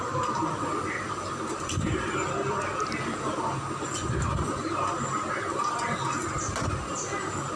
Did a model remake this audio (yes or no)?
no